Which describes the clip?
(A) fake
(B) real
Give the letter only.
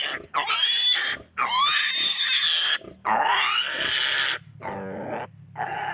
B